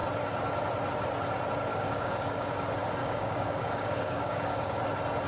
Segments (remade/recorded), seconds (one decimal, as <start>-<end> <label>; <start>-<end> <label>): 0.0-1.7 recorded; 1.7-2.5 remade; 2.5-3.0 recorded; 3.0-4.8 remade; 4.8-5.3 recorded